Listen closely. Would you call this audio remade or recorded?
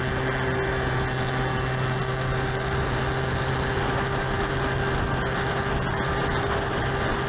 recorded